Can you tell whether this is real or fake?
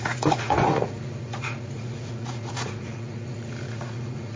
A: fake